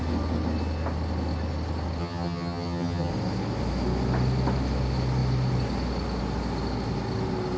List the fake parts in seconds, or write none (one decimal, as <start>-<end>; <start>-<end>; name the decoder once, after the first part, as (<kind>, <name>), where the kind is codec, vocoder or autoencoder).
2.0-3.1 (vocoder, HiFi-GAN)